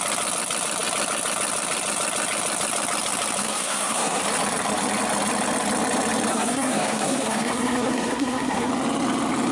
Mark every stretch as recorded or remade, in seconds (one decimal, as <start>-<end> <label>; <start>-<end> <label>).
0.0-3.4 recorded; 3.4-4.2 remade; 4.2-6.3 recorded; 6.3-8.7 remade; 8.7-9.5 recorded